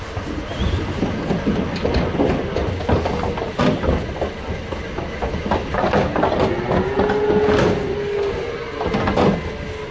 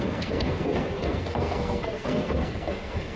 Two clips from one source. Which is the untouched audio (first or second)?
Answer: first